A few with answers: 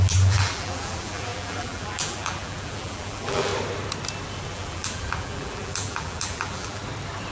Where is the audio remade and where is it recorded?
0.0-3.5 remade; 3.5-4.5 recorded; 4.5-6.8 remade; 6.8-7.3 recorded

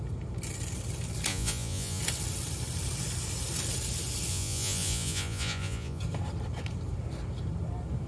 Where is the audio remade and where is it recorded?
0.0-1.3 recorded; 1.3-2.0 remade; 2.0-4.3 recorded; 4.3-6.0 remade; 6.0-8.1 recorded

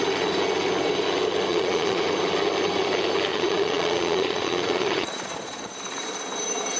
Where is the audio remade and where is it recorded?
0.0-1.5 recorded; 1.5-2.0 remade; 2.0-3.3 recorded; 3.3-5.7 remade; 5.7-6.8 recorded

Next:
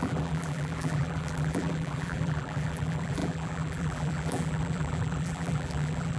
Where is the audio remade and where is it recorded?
0.0-6.2 remade

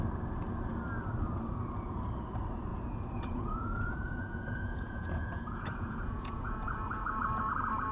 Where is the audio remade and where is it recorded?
0.0-2.7 recorded; 2.7-7.4 remade; 7.4-7.9 recorded

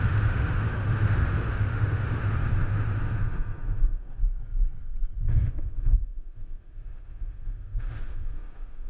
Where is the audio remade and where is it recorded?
0.0-4.2 remade; 4.2-5.3 recorded; 5.3-8.9 remade

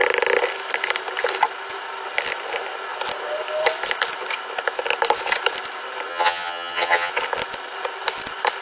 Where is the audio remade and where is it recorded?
0.0-6.1 recorded; 6.1-7.1 remade; 7.1-8.6 recorded